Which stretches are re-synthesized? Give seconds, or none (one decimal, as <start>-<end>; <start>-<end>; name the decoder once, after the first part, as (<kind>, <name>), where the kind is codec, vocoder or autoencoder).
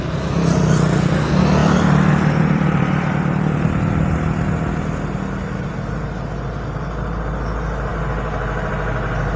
1.6-4.8 (vocoder, BigVGAN v2)